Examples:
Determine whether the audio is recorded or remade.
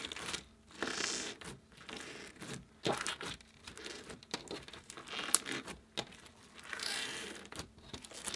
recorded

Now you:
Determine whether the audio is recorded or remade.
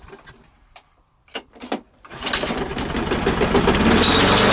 remade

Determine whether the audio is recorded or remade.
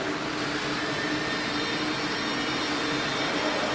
recorded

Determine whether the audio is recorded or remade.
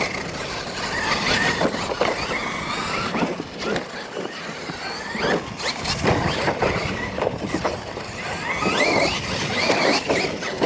recorded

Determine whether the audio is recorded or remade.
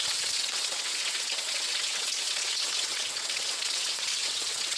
remade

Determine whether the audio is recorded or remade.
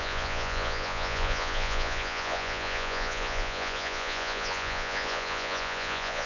remade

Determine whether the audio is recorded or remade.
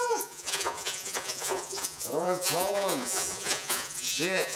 remade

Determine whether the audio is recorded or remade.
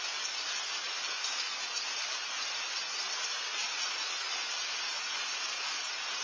recorded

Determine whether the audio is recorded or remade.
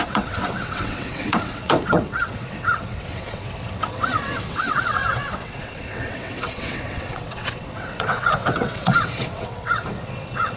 remade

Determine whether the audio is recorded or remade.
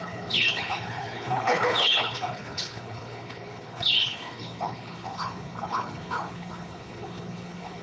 remade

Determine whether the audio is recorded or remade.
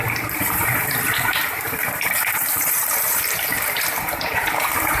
remade